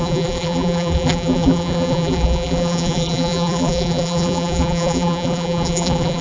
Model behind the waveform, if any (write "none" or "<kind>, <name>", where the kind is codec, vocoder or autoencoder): vocoder, BigVGAN v2